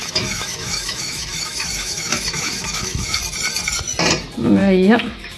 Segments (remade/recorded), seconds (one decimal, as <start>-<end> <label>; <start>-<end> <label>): 0.0-3.2 remade; 3.2-4.6 recorded; 4.6-5.4 remade